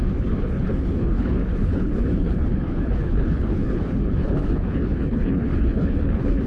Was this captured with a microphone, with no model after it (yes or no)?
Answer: no